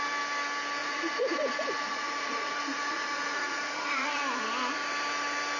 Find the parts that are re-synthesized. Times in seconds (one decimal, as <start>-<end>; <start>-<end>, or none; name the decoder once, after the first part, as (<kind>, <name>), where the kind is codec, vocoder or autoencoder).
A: 0.8-4.2 (vocoder, Vocos)